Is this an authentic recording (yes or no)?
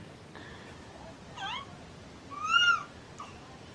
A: yes